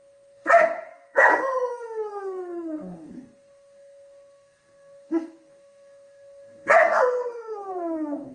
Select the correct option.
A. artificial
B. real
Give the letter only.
A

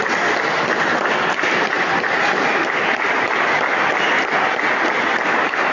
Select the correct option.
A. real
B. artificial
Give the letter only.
A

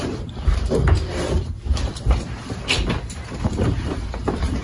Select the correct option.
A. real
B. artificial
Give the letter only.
B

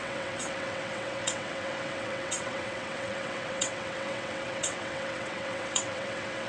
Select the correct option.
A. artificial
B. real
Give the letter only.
A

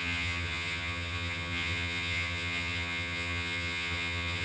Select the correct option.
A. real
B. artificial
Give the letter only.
B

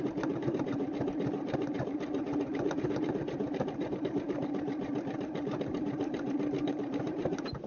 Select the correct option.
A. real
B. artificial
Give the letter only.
B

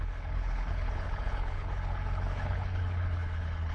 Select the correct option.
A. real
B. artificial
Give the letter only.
B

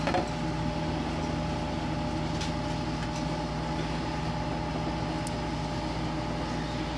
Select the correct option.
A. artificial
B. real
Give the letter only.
B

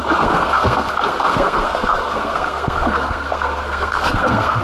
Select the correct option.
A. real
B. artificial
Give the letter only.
B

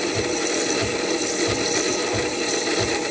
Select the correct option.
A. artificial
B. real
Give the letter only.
B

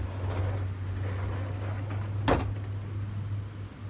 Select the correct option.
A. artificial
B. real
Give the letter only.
B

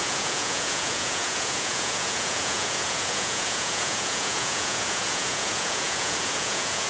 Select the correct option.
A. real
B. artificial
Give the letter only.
B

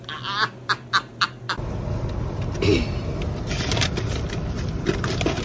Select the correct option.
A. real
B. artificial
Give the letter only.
A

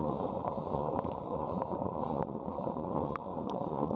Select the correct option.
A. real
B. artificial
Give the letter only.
B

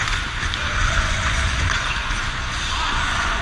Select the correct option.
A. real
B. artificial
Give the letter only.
B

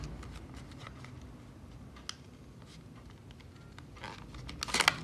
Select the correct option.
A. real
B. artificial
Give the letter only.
A